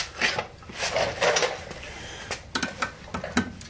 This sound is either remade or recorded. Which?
recorded